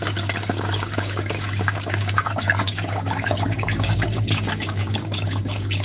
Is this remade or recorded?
remade